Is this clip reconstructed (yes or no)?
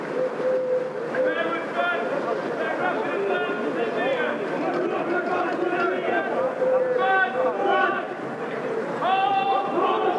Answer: no